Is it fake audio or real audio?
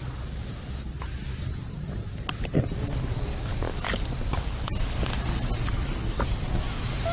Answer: real